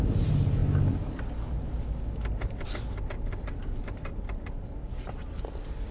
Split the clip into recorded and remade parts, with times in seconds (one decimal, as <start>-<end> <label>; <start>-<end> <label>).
0.0-5.9 recorded